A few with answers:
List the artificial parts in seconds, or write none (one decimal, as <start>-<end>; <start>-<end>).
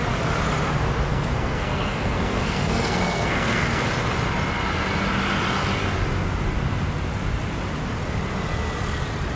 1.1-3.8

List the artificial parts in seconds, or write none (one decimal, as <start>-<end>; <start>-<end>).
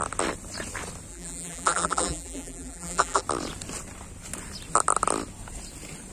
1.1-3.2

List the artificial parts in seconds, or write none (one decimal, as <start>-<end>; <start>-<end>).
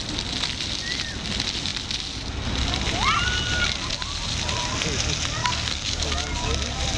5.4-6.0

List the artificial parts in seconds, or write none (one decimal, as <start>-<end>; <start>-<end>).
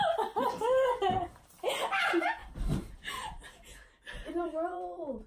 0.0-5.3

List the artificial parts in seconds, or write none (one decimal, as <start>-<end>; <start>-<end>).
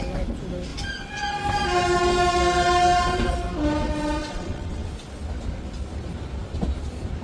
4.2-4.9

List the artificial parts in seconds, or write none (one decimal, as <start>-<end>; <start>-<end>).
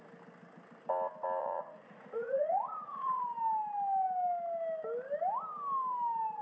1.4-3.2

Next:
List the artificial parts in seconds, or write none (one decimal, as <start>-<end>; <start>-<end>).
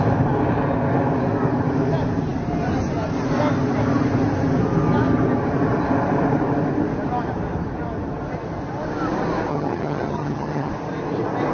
9.5-10.7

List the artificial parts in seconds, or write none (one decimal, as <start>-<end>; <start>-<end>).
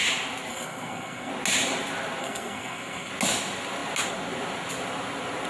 0.5-1.3; 2.2-3.1